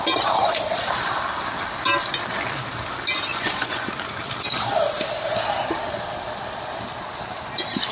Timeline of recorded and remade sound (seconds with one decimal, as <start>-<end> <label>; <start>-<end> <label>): 0.0-3.3 recorded; 3.3-3.9 remade; 3.9-7.9 recorded

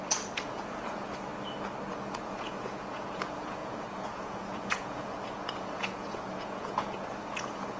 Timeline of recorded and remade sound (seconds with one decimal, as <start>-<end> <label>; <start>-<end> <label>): 0.0-1.3 remade; 1.3-1.9 recorded; 1.9-7.8 remade

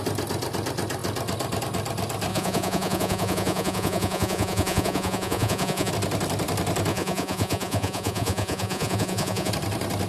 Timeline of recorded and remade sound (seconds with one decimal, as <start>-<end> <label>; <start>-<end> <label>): 0.0-2.3 recorded; 2.3-5.9 remade; 5.9-6.9 recorded; 6.9-9.5 remade; 9.5-10.1 recorded

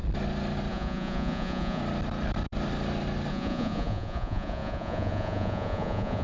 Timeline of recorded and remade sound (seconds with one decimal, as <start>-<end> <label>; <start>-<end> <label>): 0.0-0.7 recorded; 0.7-1.8 remade; 1.8-3.3 recorded; 3.3-6.2 remade